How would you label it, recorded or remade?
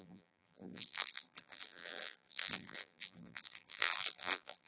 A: remade